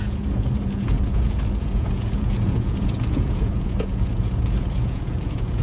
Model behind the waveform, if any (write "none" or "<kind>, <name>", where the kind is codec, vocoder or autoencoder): vocoder, Vocos